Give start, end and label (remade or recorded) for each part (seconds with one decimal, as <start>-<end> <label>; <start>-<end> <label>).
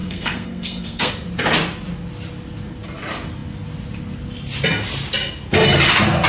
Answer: 0.0-1.1 remade; 1.1-6.3 recorded